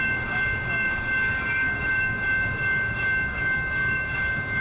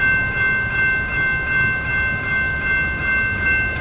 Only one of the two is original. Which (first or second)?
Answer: second